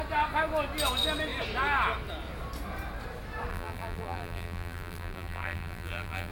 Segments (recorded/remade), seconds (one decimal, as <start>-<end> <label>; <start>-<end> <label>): 0.0-3.5 recorded; 3.5-6.3 remade